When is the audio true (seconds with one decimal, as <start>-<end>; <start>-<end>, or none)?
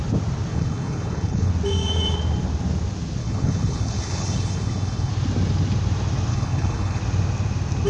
0.0-0.5; 1.5-3.2; 5.1-6.3; 7.0-7.9